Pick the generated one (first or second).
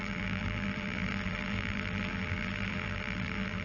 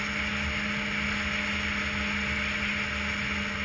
first